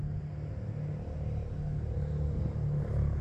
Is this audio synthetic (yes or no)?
no